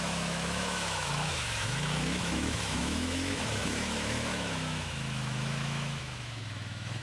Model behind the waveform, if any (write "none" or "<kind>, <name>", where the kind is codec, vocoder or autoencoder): autoencoder, DAC-VAE